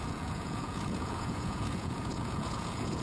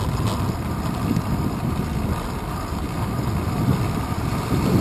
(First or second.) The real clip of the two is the second